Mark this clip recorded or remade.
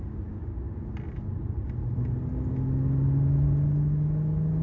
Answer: recorded